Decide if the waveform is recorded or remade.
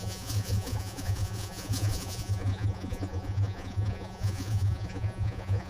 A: remade